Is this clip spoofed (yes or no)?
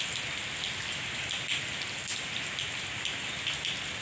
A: no